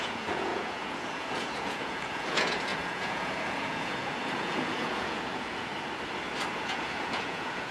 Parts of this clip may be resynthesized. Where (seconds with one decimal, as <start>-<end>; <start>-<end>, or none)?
0.0-5.7; 6.6-7.7